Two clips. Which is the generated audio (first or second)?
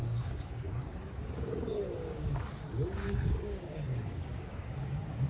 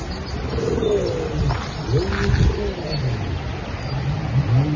first